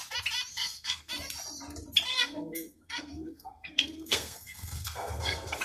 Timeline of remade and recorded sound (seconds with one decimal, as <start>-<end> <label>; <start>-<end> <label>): 0.0-0.5 recorded; 0.5-1.1 remade; 1.1-2.1 recorded; 2.1-5.6 remade